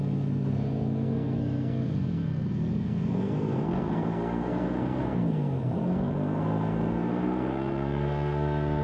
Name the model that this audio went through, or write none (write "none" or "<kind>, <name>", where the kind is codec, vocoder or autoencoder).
codec, SNAC